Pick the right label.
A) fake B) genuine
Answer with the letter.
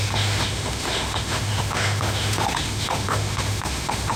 A